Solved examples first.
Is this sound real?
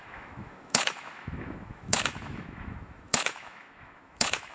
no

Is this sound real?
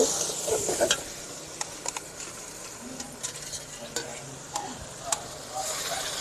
yes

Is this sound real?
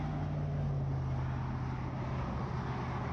yes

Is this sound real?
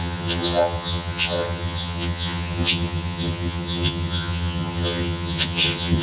no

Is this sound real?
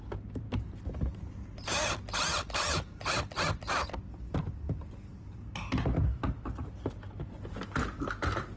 yes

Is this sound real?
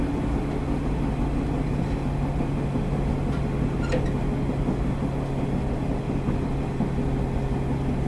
yes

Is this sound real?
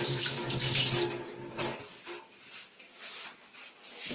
yes